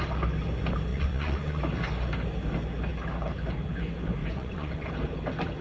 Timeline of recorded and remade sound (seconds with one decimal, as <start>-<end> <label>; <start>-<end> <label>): 0.0-0.9 recorded; 0.9-1.6 remade; 1.6-4.2 recorded; 4.2-4.9 remade; 4.9-5.6 recorded